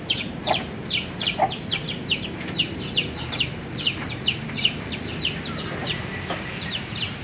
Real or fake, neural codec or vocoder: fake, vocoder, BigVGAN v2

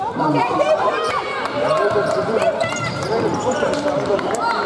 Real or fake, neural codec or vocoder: fake, vocoder, BigVGAN v2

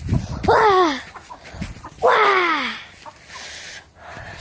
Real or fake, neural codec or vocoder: fake, vocoder, BigVGAN v2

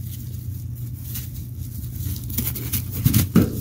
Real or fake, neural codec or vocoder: real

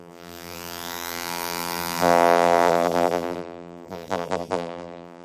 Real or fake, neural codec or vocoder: fake, vocoder, BigVGAN v2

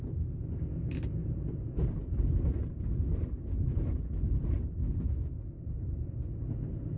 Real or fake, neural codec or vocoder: real